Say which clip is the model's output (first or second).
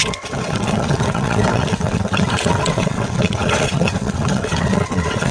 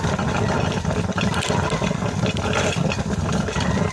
first